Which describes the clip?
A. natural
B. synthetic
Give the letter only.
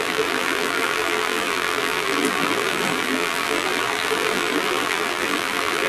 B